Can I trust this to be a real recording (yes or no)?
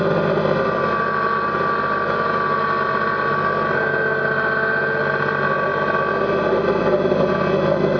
yes